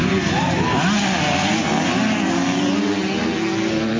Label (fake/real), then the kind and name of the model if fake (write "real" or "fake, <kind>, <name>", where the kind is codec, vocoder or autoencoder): real